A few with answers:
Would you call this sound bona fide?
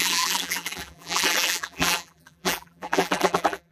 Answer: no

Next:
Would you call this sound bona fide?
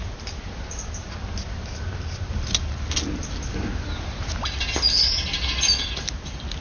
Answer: yes